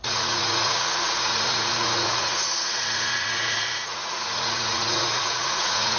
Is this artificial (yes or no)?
yes